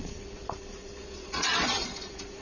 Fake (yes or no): yes